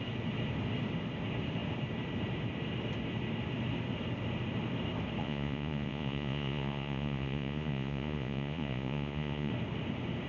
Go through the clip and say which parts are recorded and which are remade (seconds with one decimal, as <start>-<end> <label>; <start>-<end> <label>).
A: 0.0-5.2 recorded; 5.2-9.5 remade; 9.5-10.3 recorded